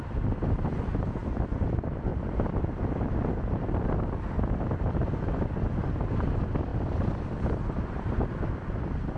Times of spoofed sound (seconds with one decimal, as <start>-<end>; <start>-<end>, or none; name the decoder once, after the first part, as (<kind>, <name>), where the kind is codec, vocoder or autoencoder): 6.7-7.4 (vocoder, BigVGAN v2)